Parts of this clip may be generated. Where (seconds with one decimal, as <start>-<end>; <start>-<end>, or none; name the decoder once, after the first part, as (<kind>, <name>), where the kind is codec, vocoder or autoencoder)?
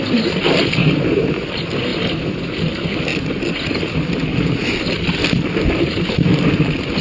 0.0-0.8 (vocoder, BigVGAN v2); 1.3-1.9; 2.5-3.1; 3.8-7.0